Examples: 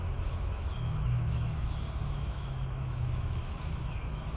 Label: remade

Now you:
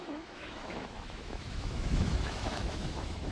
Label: remade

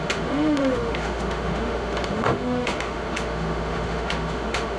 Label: remade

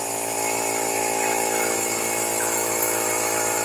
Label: remade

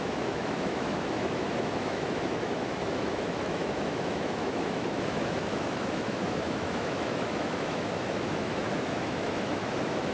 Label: remade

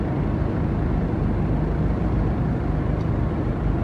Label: recorded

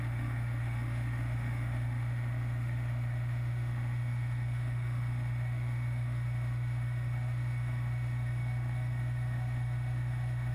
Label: remade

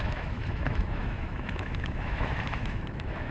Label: remade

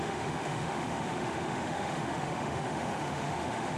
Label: remade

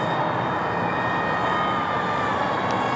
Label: recorded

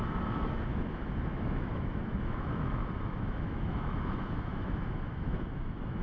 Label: remade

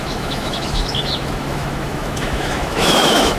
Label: remade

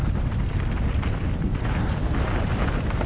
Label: recorded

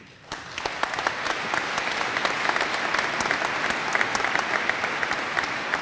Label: recorded